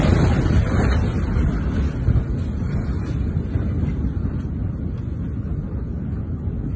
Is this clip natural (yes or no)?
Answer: yes